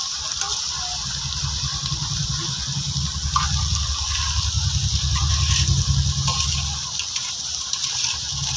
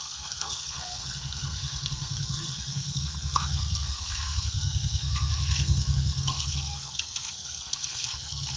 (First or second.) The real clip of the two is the first